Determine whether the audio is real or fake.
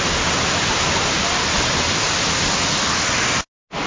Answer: real